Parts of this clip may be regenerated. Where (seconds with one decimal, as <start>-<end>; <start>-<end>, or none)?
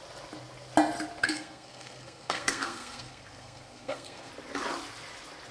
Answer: 1.2-4.3